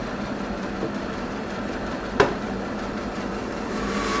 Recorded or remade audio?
remade